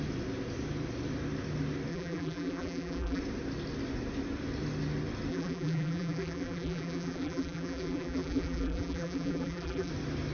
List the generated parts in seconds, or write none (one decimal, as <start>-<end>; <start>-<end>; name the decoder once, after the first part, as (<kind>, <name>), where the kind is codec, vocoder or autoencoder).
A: 1.9-3.2 (vocoder, BigVGAN v2); 5.3-9.9